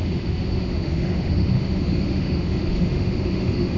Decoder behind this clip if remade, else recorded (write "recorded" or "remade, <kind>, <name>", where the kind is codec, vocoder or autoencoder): remade, autoencoder, DAC-VAE